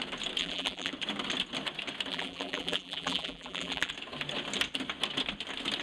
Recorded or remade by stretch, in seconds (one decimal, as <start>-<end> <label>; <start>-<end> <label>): 0.0-0.4 recorded; 0.4-0.9 remade; 0.9-2.1 recorded; 2.1-3.9 remade; 3.9-5.8 recorded